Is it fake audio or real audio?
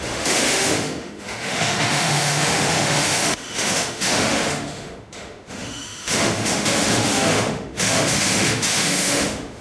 fake